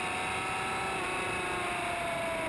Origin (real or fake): real